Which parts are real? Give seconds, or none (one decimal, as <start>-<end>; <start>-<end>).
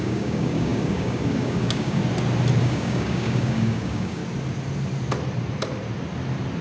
2.0-2.6; 4.2-6.6